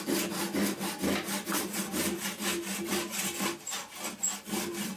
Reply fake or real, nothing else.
real